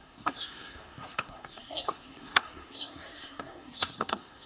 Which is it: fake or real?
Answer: fake